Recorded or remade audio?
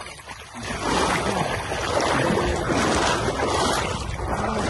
recorded